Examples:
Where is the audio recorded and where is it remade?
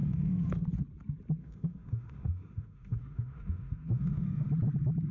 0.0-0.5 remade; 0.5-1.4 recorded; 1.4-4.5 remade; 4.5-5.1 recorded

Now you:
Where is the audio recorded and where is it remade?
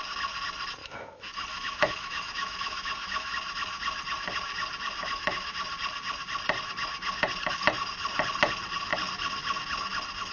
0.0-0.8 recorded; 0.8-3.3 remade; 3.3-5.0 recorded; 5.0-5.6 remade; 5.6-10.3 recorded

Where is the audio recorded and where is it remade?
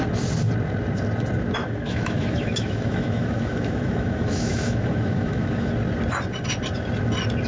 0.0-1.6 recorded; 1.6-5.7 remade; 5.7-7.5 recorded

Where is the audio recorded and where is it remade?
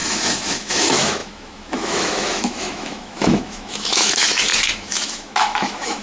0.0-6.0 remade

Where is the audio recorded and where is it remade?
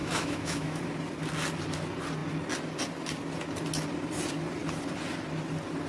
0.0-0.8 remade; 0.8-5.9 recorded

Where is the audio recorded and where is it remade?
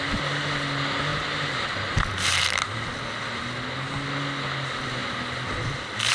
0.0-6.1 recorded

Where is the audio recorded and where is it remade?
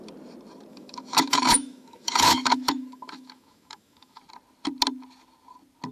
0.0-0.7 recorded; 0.7-4.2 remade; 4.2-5.9 recorded